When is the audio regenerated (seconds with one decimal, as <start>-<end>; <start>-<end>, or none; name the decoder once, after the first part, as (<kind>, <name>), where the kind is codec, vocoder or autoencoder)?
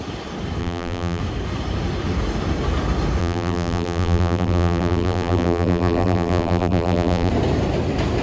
0.6-1.2 (vocoder, BigVGAN v2); 3.2-7.3